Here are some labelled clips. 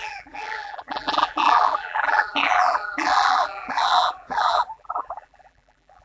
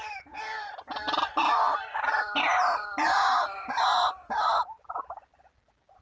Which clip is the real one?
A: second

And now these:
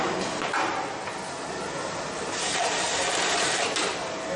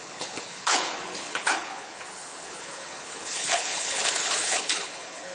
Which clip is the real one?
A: first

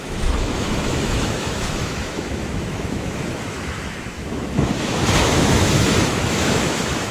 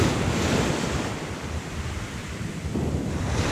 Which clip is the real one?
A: second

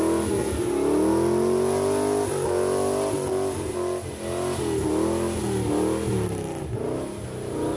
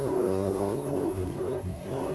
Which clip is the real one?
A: first